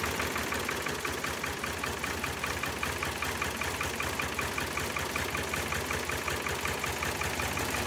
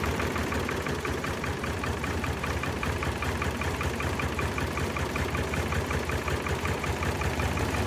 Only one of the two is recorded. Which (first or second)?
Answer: first